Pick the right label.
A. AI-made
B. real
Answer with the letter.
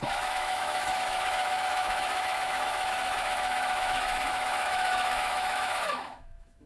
A